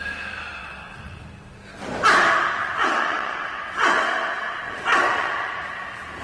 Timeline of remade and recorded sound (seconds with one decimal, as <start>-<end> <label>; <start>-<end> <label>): 0.0-0.6 recorded; 0.6-1.2 remade; 1.2-2.6 recorded; 2.6-5.5 remade; 5.5-6.2 recorded

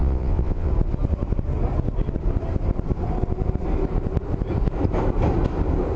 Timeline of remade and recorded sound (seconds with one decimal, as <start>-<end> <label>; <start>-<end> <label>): 0.0-0.7 remade; 0.7-6.0 recorded

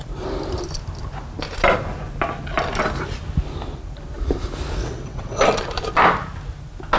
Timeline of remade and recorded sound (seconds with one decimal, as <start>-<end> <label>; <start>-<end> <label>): 0.0-4.8 recorded; 4.8-5.5 remade; 5.5-7.0 recorded

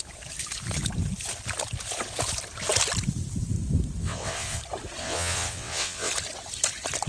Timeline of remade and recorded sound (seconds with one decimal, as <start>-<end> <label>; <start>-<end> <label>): 0.0-4.0 recorded; 4.0-4.6 remade; 4.6-5.0 recorded; 5.0-6.1 remade; 6.1-7.1 recorded

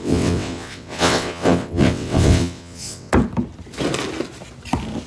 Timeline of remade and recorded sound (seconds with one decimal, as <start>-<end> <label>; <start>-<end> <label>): 0.0-3.1 remade; 3.1-5.1 recorded